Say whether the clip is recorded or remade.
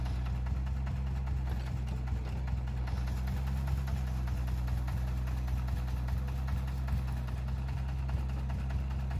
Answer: recorded